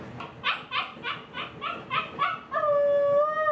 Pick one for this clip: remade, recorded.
recorded